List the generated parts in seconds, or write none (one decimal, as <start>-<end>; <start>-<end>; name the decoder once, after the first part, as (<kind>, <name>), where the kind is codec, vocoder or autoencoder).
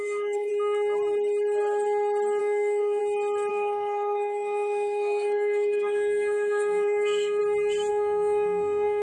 0.0-0.5 (codec, SNAC); 2.4-3.0; 3.5-7.4; 7.9-9.0